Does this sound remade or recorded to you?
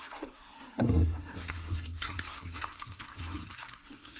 remade